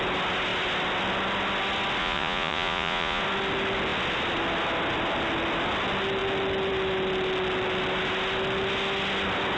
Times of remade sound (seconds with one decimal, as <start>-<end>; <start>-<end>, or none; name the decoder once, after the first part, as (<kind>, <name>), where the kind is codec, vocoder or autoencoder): 2.0-3.2 (vocoder, Vocos)